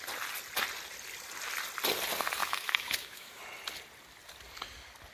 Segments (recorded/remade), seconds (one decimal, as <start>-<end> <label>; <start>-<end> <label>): 0.0-2.4 recorded; 2.4-3.4 remade; 3.4-5.1 recorded